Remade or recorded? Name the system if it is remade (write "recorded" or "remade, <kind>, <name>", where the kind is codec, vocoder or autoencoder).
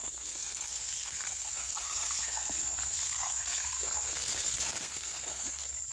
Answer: remade, codec, SNAC